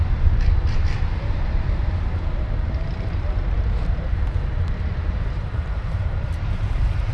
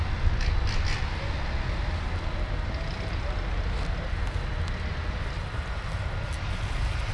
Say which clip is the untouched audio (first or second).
second